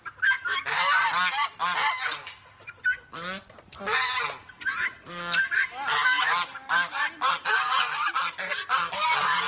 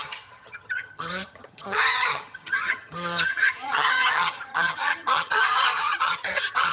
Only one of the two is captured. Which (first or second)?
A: first